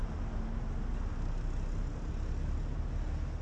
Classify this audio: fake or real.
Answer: real